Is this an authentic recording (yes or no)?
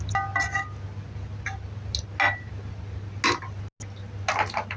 yes